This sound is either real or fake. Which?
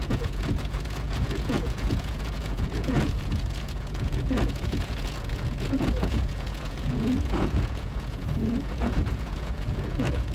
fake